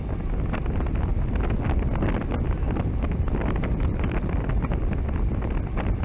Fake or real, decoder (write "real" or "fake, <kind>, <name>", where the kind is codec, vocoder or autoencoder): real